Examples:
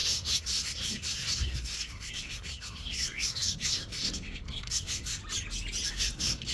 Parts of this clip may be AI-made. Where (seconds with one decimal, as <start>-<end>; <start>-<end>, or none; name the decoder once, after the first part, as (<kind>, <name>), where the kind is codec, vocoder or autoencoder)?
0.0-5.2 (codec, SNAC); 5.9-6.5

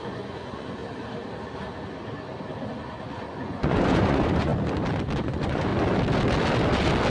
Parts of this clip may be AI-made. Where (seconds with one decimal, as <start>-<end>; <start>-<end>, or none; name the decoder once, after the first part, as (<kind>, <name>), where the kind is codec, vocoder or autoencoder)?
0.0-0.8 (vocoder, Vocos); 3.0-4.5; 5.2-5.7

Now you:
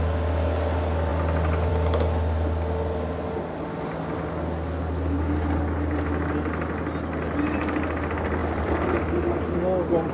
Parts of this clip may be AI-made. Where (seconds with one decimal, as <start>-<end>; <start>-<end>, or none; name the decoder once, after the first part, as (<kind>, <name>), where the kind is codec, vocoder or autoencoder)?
8.4-9.0 (vocoder, BigVGAN v2)

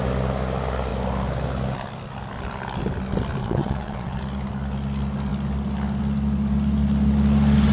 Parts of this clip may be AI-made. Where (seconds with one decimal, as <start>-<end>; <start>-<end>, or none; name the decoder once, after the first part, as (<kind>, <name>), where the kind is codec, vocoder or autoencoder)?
3.4-4.2 (vocoder, WaveNeXt)

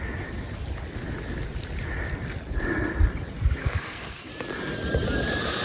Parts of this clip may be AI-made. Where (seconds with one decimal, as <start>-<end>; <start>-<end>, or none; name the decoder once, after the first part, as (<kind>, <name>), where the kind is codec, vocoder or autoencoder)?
3.6-4.3 (codec, SNAC)

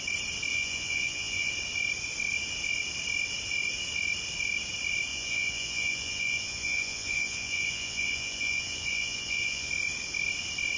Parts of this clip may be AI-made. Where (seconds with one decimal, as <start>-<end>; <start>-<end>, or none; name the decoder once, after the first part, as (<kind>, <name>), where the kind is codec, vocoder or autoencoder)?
0.5-1.5 (vocoder, Vocos); 5.1-9.7

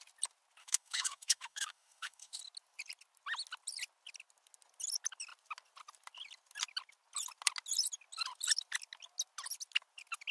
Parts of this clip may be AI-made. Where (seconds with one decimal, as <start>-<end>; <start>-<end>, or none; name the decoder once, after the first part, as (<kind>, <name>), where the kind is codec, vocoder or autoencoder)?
0.6-2.4 (autoencoder, DAC-VAE)

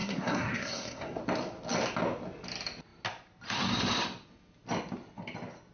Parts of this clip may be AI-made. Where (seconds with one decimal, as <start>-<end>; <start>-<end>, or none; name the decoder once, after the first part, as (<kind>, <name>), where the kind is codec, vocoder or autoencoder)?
0.0-1.2 (codec, SNAC)